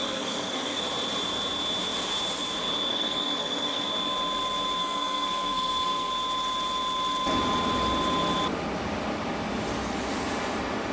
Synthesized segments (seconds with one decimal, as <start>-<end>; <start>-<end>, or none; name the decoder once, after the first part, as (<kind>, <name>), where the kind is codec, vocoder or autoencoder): 0.0-0.8 (codec, SNAC); 2.9-3.9; 4.8-6.1